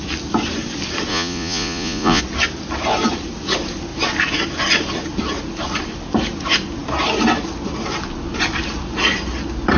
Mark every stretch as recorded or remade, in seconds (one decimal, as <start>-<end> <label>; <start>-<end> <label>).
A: 0.0-1.1 recorded; 1.1-2.2 remade; 2.2-9.8 recorded